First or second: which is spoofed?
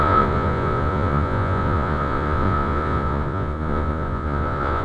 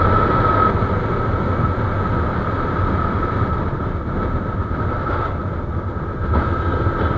first